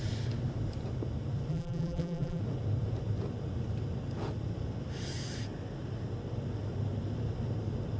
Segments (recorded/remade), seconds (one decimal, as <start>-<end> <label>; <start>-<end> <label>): 0.0-1.5 recorded; 1.5-2.4 remade; 2.4-8.0 recorded